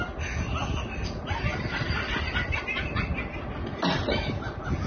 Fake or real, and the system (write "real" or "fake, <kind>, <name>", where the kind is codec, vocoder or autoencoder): real